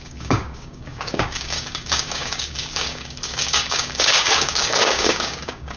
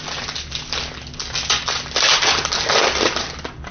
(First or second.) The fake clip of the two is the first